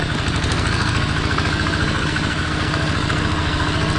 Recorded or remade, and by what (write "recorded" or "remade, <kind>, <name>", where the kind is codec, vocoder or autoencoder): remade, codec, SNAC